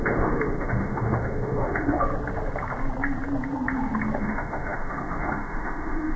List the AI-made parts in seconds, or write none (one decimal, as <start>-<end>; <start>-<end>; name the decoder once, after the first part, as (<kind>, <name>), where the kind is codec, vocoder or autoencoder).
0.0-2.0 (autoencoder, DAC-VAE); 4.2-6.2